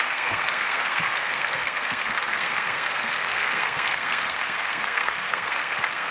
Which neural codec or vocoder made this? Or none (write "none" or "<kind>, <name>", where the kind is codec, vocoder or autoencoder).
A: codec, SNAC